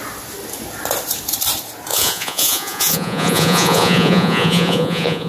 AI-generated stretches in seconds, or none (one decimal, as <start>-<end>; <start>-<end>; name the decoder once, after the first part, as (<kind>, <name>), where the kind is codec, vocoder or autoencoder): 1.9-5.3 (vocoder, Vocos)